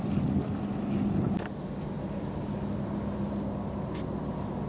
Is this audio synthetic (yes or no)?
no